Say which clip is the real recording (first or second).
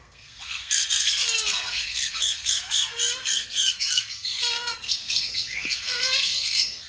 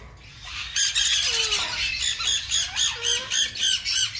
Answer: second